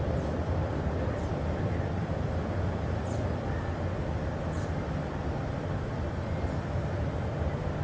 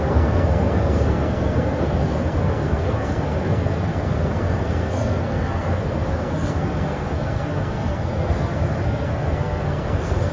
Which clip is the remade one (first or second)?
second